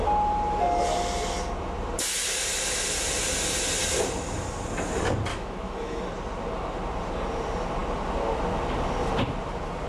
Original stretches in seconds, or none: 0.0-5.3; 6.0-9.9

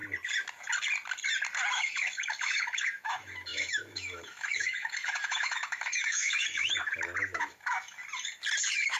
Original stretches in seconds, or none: 0.0-1.7; 8.0-8.6

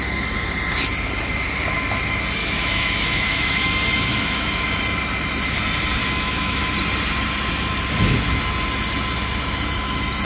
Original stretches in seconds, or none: 0.0-2.4; 4.8-6.0; 6.6-10.2